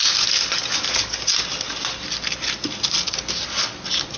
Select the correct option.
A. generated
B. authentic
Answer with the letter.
B